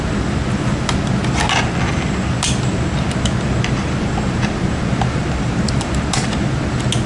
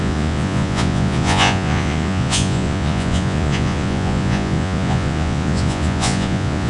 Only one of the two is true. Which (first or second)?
first